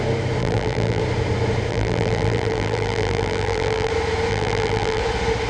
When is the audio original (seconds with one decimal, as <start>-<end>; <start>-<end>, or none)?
0.0-0.4; 1.0-1.7; 3.9-4.3; 5.0-5.5